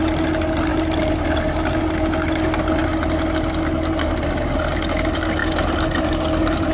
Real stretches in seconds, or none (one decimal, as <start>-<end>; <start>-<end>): 0.0-6.7